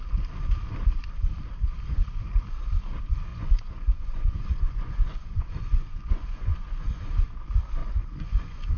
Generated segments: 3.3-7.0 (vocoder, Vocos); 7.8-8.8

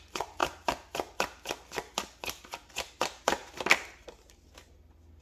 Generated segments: none

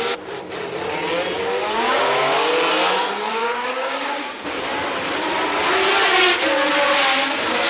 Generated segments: 1.6-2.5 (codec, DAC); 3.3-4.3

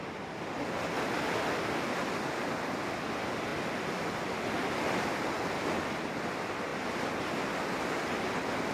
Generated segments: none

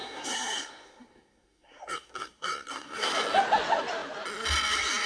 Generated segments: 0.0-3.1 (codec, SNAC)

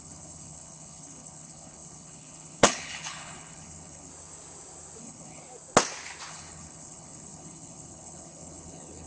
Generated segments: 0.0-4.1 (codec, HILCodec); 5.0-5.4; 6.3-9.1

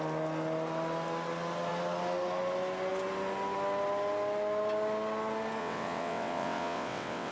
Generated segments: 5.6-7.3 (vocoder, WaveNeXt)